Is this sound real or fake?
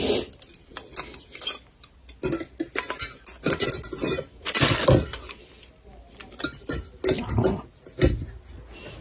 real